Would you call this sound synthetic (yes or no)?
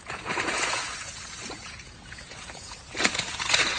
yes